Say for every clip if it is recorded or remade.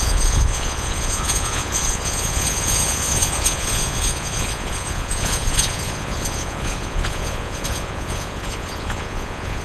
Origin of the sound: remade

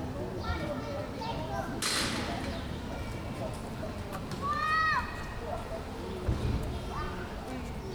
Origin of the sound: recorded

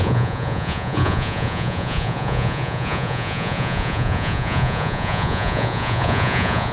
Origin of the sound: remade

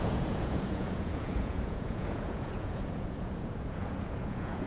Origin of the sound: remade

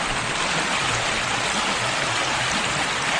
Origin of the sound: recorded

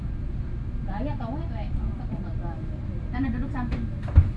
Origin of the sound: recorded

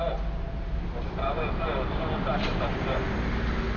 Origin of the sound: recorded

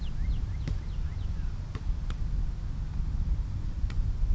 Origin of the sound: recorded